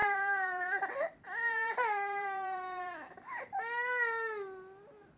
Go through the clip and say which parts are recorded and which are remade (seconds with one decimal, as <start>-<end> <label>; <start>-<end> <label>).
0.0-3.1 remade; 3.1-5.2 recorded